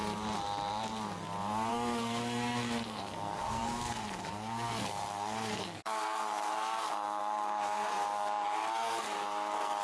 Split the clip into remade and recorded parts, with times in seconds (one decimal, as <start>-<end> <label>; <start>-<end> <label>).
0.0-1.7 recorded; 1.7-9.8 remade